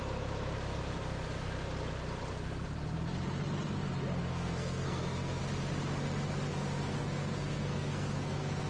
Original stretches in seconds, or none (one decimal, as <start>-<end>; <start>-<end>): 0.0-4.2; 5.4-6.5